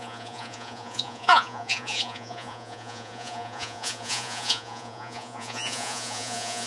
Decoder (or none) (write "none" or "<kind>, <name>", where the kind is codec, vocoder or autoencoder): vocoder, Vocos